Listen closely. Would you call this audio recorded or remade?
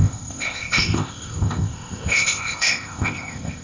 remade